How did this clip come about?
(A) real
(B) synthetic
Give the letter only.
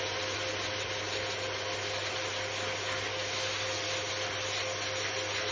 A